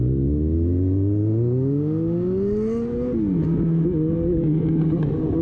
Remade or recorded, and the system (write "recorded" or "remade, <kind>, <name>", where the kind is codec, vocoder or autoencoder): recorded